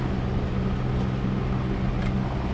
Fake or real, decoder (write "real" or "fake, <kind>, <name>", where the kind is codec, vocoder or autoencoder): real